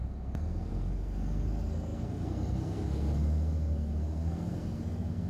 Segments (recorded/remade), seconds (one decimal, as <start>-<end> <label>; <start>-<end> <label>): 0.0-5.3 remade